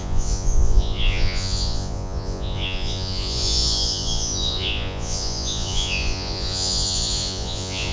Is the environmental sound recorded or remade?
remade